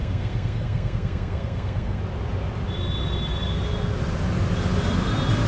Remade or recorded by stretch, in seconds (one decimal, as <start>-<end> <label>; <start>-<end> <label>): 0.0-2.0 remade; 2.0-5.5 recorded